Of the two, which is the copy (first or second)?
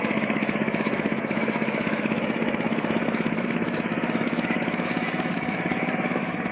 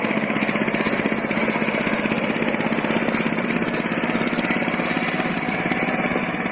first